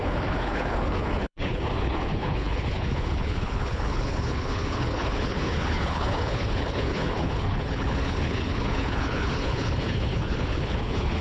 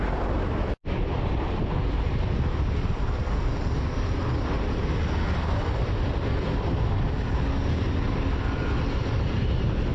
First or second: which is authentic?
second